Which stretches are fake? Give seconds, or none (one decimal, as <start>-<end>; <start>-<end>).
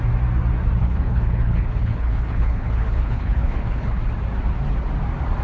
0.8-4.0